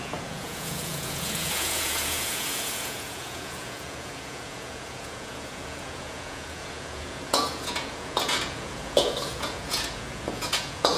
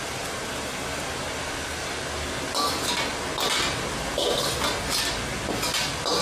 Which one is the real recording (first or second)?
second